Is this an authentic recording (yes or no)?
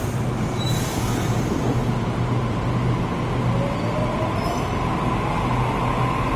yes